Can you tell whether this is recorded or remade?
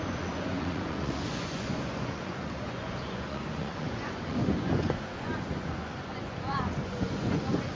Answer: remade